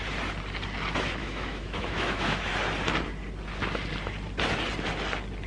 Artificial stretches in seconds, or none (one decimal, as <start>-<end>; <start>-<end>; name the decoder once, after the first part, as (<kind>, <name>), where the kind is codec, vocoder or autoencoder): 1.2-2.5 (autoencoder, DAC-VAE)